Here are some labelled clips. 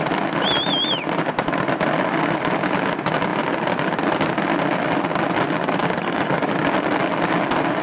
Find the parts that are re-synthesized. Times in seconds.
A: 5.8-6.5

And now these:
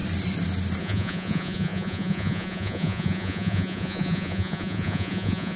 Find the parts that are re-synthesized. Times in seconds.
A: 0.8-5.6

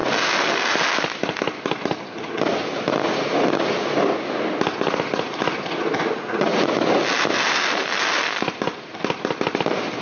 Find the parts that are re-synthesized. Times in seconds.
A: none

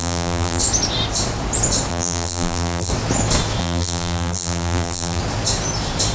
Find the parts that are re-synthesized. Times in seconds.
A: 0.0-0.6; 1.9-2.9; 3.6-5.2